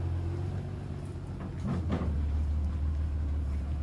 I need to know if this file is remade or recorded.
recorded